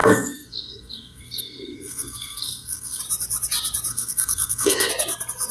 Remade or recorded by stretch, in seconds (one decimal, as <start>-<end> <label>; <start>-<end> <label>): 0.0-3.0 remade; 3.0-3.9 recorded; 3.9-4.9 remade; 4.9-5.5 recorded